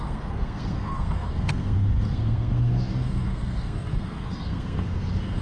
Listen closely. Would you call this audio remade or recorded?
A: remade